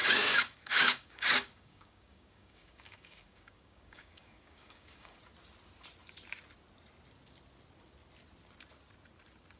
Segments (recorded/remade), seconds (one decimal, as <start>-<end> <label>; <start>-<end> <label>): 0.0-5.2 remade; 5.2-9.6 recorded